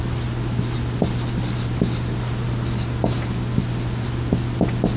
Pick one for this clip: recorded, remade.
recorded